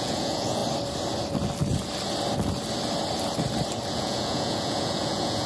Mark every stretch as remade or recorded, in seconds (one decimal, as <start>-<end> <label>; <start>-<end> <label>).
0.0-0.6 remade; 0.6-3.9 recorded; 3.9-5.5 remade